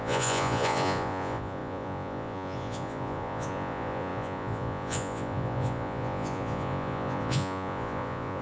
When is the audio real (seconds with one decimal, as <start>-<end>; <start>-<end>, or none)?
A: none